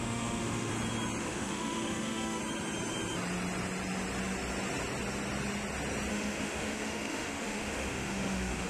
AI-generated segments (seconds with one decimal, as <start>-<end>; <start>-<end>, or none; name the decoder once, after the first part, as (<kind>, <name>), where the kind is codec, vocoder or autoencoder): 0.0-0.7 (autoencoder, DAC-VAE); 1.2-2.4; 6.1-8.7